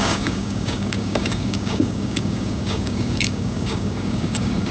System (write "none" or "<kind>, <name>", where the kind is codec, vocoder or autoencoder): codec, DAC